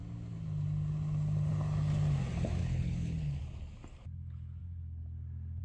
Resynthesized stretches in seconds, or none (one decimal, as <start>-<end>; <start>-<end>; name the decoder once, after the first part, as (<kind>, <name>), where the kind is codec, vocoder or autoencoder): 2.6-3.4 (codec, HILCodec)